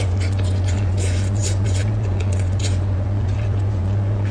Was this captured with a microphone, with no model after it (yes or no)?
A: no